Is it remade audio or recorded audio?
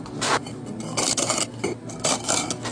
recorded